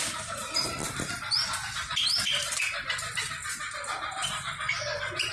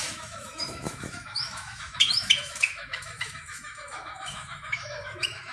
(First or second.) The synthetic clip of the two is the second